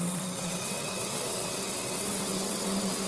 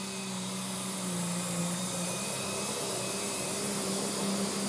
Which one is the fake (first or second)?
first